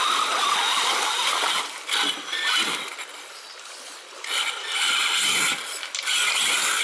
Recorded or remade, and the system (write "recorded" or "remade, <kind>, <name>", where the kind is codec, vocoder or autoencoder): recorded